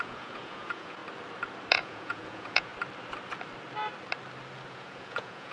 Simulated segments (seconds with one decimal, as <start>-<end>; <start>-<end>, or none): 0.0-1.0; 1.7-2.7; 4.7-5.5